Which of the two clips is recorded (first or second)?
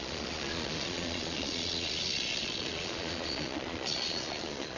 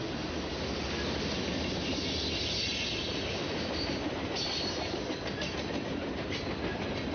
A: second